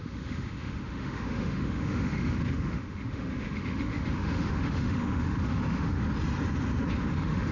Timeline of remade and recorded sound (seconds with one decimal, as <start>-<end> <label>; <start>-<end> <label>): 0.0-6.0 remade; 6.0-7.1 recorded; 7.1-7.5 remade